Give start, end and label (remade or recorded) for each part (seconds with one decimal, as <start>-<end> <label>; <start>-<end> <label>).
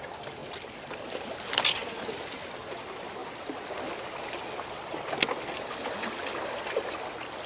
0.0-7.5 recorded